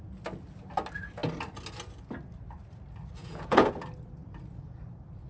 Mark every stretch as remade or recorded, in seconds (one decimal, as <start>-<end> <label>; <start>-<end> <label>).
0.0-3.2 recorded; 3.2-3.7 remade; 3.7-5.3 recorded